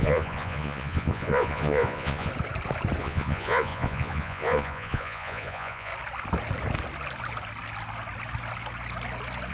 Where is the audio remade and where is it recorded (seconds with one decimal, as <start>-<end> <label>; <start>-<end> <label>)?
0.0-2.3 remade; 2.3-3.0 recorded; 3.0-5.9 remade; 5.9-9.5 recorded